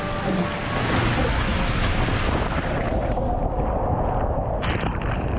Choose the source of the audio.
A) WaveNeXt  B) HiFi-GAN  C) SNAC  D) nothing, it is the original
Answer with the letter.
D